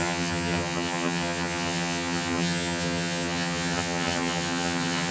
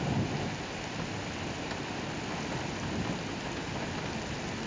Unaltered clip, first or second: second